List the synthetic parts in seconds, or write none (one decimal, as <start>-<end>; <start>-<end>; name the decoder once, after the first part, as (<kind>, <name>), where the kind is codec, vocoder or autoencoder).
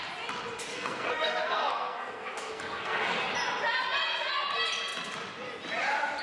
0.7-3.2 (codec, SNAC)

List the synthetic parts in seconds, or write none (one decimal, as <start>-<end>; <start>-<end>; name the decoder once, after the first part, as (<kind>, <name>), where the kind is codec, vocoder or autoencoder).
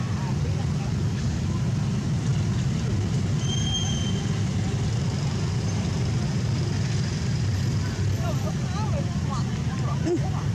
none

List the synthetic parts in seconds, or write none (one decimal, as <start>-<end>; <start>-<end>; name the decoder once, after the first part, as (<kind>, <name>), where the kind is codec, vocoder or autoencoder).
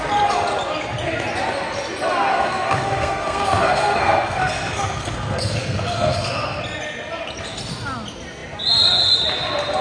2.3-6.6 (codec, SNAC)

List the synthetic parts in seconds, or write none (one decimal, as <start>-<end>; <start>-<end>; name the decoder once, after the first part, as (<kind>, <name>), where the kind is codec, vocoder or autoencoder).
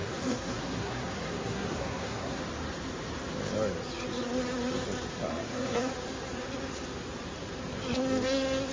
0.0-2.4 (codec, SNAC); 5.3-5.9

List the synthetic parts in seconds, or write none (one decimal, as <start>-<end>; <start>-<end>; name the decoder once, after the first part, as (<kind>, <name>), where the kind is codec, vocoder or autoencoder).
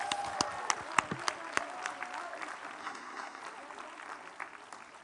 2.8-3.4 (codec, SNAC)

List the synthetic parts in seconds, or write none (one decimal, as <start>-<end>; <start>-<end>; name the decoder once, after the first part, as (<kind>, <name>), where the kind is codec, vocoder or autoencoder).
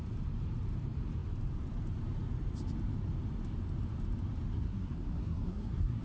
4.5-6.0 (codec, SNAC)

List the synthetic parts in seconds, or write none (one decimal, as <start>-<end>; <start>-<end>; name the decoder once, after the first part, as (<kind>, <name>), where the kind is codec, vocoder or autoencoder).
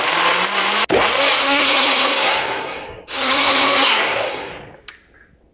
1.4-4.5 (codec, SNAC)